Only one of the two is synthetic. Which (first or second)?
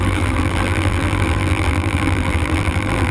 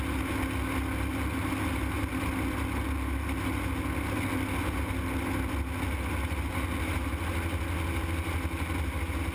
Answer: first